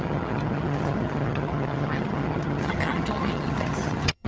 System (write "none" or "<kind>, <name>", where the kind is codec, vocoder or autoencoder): vocoder, HiFi-GAN